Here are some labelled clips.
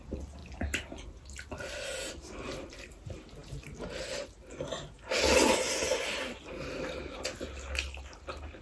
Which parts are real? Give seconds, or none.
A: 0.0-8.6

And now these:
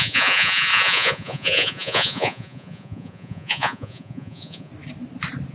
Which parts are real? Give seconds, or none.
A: 4.7-5.5